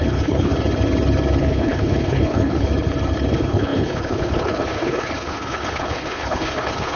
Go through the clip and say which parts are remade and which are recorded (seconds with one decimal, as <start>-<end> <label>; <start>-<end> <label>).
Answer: 0.0-0.5 remade; 0.5-1.4 recorded; 1.4-2.7 remade; 2.7-3.3 recorded; 3.3-7.0 remade